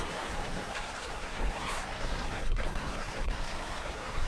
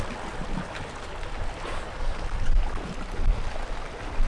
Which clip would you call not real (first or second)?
first